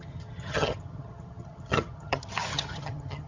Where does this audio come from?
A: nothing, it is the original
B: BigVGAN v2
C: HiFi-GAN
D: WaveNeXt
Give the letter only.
C